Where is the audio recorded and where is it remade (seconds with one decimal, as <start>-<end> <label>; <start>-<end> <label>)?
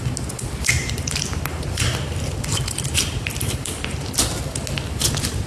0.0-0.8 recorded; 0.8-4.1 remade; 4.1-5.5 recorded